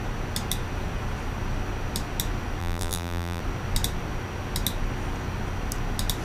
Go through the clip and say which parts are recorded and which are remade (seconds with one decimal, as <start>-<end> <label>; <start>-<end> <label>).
0.0-2.6 recorded; 2.6-3.4 remade; 3.4-6.2 recorded